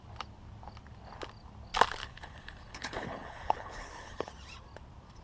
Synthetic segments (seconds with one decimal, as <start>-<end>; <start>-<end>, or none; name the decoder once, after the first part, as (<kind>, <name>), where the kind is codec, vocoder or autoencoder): 2.0-4.3 (codec, HILCodec)